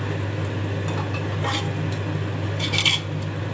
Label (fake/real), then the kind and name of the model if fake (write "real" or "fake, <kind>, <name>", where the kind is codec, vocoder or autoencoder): real